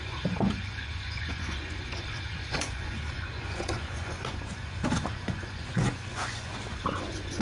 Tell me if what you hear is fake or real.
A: fake